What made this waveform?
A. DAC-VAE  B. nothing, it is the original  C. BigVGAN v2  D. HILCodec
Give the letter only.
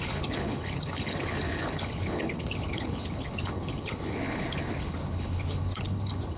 D